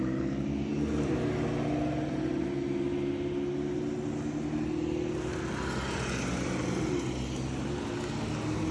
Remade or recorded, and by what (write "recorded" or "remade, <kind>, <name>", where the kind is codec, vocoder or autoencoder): recorded